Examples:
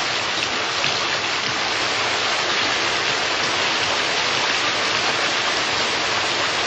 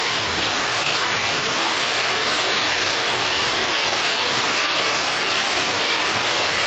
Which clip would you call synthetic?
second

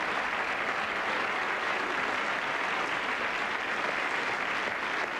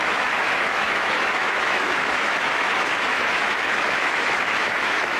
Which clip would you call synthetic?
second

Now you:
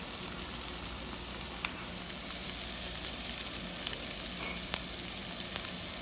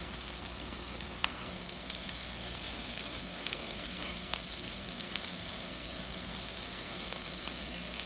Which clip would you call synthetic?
second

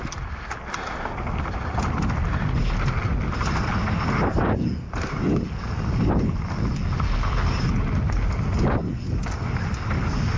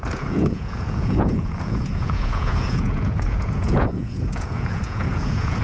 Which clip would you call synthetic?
second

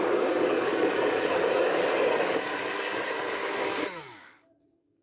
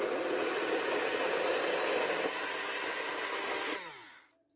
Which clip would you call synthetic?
first